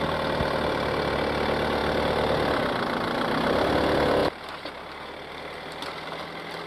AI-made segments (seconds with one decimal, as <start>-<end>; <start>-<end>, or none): none